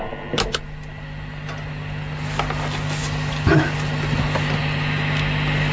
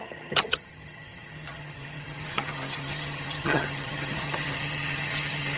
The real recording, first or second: first